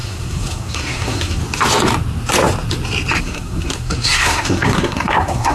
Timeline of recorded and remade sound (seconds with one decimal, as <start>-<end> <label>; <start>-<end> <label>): 0.0-1.4 remade; 1.4-3.2 recorded; 3.2-5.5 remade